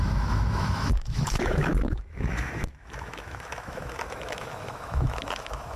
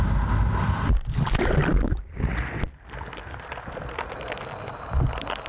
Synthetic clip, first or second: first